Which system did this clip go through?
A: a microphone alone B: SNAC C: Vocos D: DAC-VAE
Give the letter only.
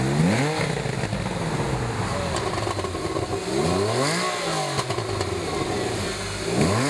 A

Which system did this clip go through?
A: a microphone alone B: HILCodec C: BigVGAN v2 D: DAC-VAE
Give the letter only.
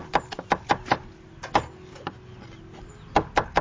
A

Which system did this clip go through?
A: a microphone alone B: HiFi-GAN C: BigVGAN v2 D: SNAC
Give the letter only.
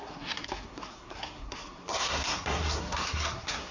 D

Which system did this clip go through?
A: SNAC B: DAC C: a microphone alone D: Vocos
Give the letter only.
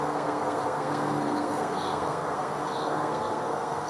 A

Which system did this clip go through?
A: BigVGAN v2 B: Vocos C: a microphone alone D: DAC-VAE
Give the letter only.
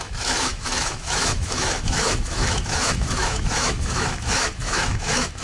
D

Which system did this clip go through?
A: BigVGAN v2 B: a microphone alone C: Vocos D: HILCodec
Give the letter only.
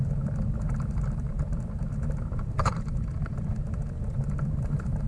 A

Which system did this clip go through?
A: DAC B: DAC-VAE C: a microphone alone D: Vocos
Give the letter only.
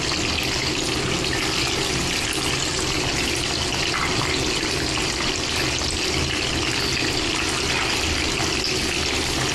C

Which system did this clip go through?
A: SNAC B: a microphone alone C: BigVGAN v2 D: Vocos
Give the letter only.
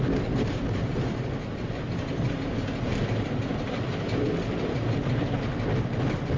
B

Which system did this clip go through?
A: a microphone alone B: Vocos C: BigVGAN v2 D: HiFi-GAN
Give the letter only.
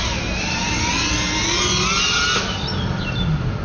A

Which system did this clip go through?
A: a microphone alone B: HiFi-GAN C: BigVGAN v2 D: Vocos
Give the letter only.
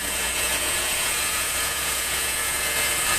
D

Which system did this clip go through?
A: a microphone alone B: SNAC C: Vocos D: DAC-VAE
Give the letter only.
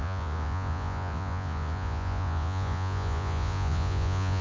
C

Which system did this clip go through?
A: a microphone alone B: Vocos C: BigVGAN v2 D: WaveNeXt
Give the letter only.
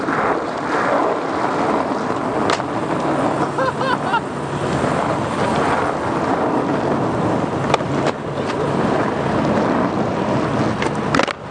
A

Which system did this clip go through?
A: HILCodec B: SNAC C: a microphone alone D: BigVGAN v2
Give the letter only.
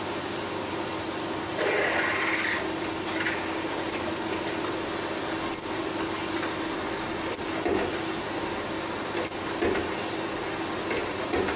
C